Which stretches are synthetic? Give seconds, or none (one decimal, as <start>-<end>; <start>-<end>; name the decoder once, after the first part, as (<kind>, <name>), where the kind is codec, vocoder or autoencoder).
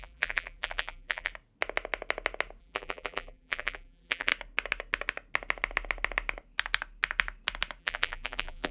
0.0-1.3 (vocoder, BigVGAN v2); 2.6-4.3; 7.8-8.7